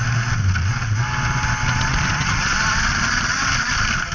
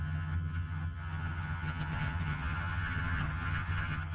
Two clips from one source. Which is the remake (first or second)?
second